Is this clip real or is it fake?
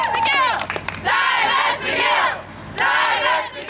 real